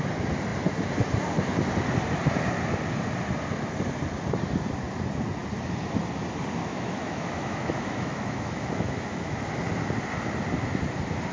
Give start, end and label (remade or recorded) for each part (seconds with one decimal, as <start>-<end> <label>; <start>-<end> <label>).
0.0-6.6 recorded; 6.6-9.4 remade; 9.4-11.3 recorded